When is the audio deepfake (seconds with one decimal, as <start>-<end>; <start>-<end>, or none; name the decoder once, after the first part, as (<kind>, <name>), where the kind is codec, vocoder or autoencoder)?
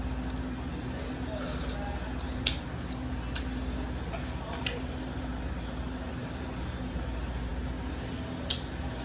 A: none